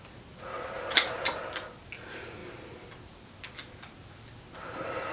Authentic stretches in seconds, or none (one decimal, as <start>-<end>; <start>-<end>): 0.0-5.1